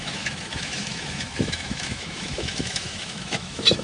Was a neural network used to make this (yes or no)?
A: yes